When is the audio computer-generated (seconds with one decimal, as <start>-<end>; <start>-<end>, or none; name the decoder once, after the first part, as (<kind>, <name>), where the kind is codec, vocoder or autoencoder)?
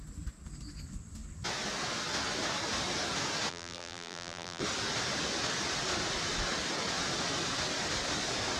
3.5-4.6 (vocoder, BigVGAN v2)